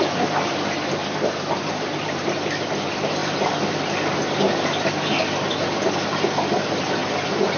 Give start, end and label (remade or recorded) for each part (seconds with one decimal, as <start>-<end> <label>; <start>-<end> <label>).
0.0-1.0 remade; 1.0-1.7 recorded; 1.7-3.2 remade; 3.2-6.5 recorded; 6.5-7.0 remade; 7.0-7.6 recorded